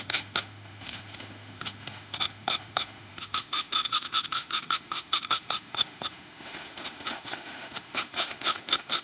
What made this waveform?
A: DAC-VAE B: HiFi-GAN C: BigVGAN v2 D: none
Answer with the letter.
A